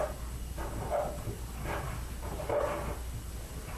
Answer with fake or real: real